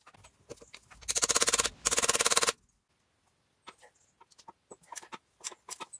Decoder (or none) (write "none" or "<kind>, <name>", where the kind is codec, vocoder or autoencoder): none